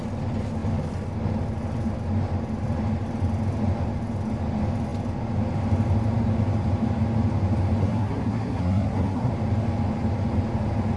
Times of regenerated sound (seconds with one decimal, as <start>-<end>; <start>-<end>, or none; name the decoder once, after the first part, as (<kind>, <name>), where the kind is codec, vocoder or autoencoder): 7.8-9.3 (codec, SNAC)